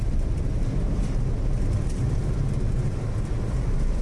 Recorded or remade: recorded